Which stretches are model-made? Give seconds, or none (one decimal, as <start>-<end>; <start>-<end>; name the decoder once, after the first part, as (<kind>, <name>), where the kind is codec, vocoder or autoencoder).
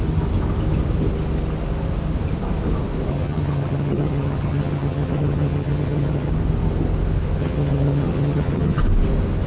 3.1-6.3 (vocoder, HiFi-GAN); 7.4-8.8